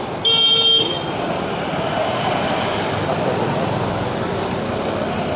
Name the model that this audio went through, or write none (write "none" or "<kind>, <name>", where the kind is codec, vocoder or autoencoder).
none